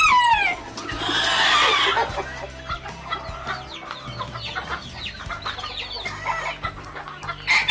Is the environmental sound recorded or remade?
recorded